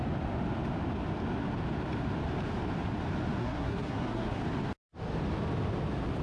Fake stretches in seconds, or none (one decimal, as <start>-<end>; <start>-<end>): 3.4-4.4